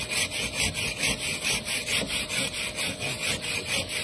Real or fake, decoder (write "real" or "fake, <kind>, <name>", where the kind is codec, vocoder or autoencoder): real